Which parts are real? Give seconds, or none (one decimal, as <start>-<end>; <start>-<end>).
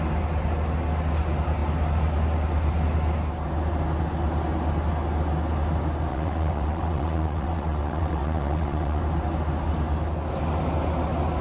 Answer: 0.0-6.1; 9.0-11.4